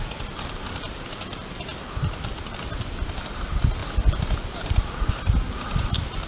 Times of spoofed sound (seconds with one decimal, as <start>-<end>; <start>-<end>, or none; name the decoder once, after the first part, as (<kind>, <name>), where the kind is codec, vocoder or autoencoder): 3.8-5.1 (vocoder, BigVGAN v2)